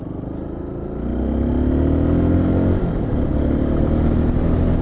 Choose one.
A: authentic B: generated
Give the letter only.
A